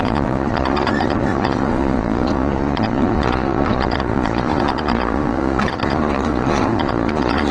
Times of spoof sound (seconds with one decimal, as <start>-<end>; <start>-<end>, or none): 0.0-7.5